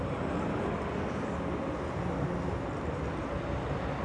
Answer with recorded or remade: recorded